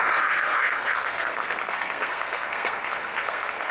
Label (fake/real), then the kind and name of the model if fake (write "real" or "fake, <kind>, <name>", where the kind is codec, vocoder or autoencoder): fake, codec, SNAC